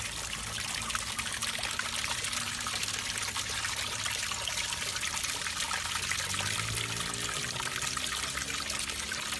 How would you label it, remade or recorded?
recorded